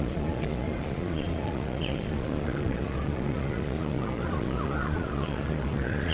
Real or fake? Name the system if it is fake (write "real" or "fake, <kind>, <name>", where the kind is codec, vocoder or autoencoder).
fake, vocoder, Vocos